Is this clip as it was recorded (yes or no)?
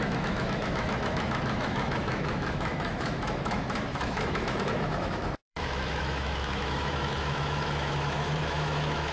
no